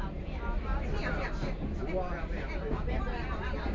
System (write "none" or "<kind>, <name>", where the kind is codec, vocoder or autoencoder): none